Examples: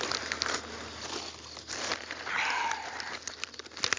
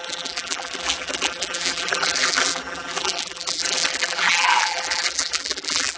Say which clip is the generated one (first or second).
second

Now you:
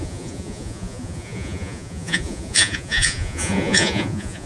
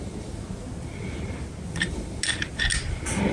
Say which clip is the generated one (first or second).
first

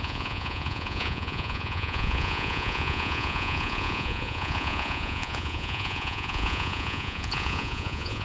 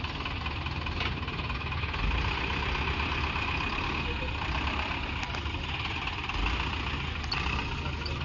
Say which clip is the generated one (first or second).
first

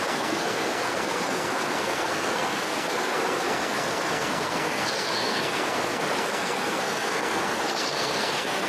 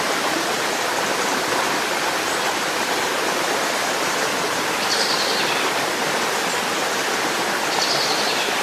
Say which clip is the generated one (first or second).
first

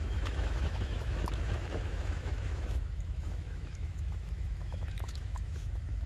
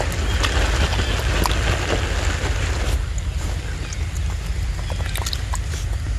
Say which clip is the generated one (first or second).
first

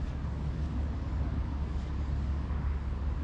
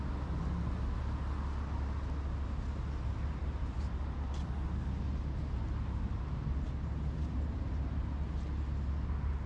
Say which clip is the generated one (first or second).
first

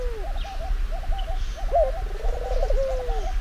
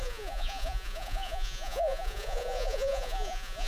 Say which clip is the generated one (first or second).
second